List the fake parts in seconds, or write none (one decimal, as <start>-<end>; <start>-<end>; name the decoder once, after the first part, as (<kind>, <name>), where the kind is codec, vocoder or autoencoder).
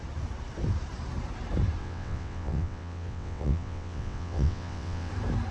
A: 1.8-5.1 (vocoder, WaveNeXt)